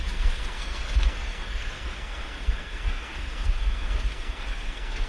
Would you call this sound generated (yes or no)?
yes